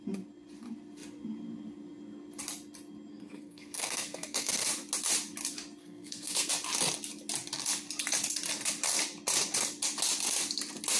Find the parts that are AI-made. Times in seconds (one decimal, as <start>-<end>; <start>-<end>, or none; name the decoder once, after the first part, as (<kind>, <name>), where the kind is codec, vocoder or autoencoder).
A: 3.1-4.7 (codec, SNAC); 5.8-6.5